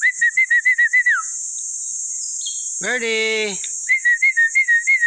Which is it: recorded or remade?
recorded